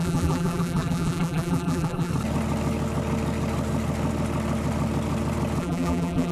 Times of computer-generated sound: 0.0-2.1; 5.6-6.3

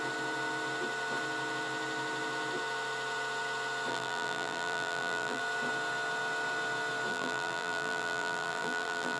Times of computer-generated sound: 3.9-5.4; 7.1-9.2

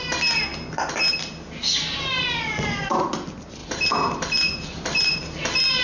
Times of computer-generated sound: 1.6-3.1; 3.6-5.3

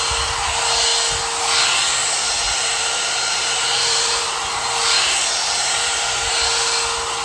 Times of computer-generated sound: 2.0-6.3

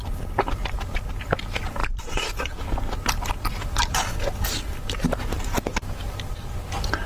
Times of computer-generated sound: 1.8-6.1